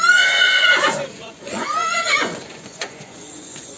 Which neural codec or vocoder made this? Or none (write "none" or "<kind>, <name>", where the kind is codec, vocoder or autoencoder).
vocoder, Vocos